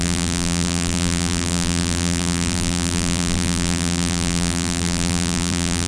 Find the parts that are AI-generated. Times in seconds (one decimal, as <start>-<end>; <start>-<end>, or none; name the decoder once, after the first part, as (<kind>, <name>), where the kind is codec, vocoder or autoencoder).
0.0-5.9 (vocoder, BigVGAN v2)